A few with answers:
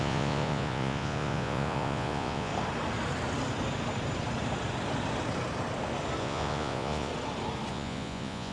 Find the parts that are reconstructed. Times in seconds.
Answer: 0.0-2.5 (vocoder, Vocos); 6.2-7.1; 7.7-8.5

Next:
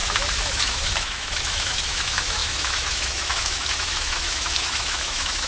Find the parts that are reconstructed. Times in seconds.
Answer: 0.0-5.5 (autoencoder, DAC-VAE)

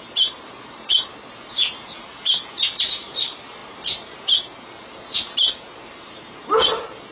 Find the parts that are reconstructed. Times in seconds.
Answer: 0.0-7.1 (vocoder, BigVGAN v2)

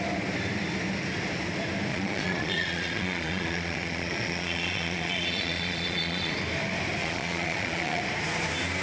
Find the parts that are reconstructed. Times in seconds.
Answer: 1.9-6.3 (vocoder, Vocos); 7.0-8.0

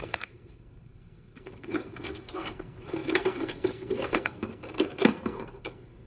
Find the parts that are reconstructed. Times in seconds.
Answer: 0.0-6.1 (codec, SNAC)

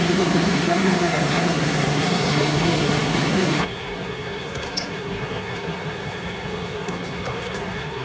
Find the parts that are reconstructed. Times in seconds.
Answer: 0.0-8.0 (codec, SNAC)

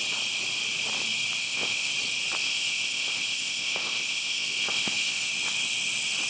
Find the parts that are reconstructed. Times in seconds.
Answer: 1.4-1.9 (codec, ZipCodec); 2.4-5.3